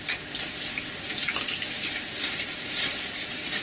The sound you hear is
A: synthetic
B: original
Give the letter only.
B